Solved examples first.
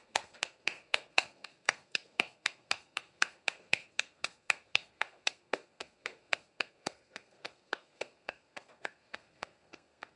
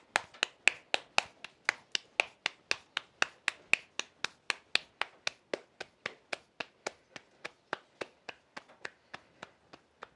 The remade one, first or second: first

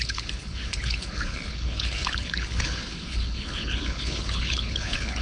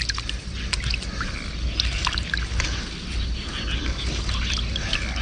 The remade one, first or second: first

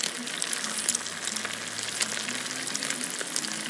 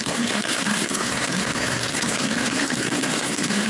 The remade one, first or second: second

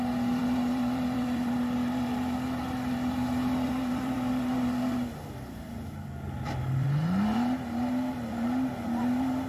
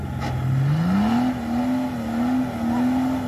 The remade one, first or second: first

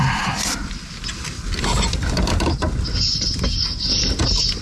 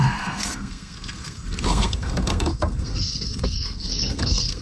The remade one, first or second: second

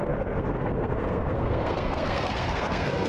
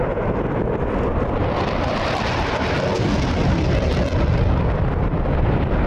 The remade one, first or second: first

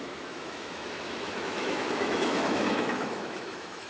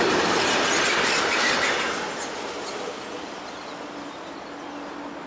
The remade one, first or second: first